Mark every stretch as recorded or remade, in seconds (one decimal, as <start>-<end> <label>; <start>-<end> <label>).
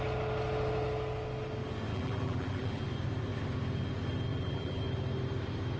0.0-1.9 recorded; 1.9-2.8 remade; 2.8-4.3 recorded; 4.3-4.8 remade; 4.8-5.8 recorded